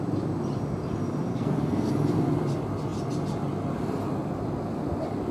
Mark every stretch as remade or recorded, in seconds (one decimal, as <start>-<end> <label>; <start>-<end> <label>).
0.0-1.3 recorded; 1.3-1.9 remade; 1.9-5.3 recorded